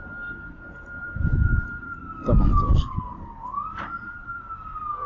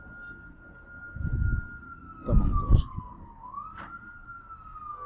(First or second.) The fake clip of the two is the first